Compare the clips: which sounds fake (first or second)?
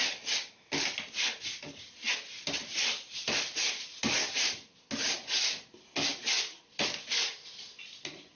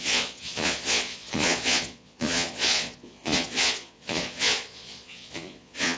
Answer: second